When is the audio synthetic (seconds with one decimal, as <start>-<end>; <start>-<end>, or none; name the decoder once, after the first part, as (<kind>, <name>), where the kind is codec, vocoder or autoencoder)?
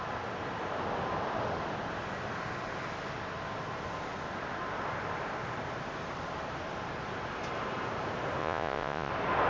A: 8.4-9.1 (vocoder, Vocos)